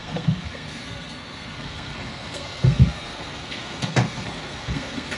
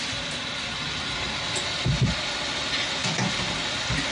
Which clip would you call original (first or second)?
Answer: second